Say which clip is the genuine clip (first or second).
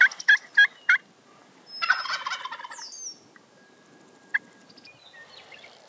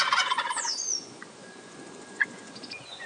first